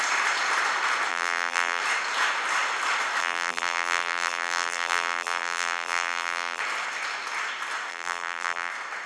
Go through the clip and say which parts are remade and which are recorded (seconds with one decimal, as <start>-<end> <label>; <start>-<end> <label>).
0.0-1.1 recorded; 1.1-1.8 remade; 1.8-3.2 recorded; 3.2-6.6 remade; 6.6-7.9 recorded; 7.9-8.7 remade; 8.7-9.1 recorded